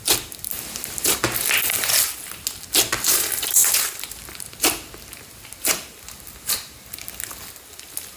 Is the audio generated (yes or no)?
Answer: no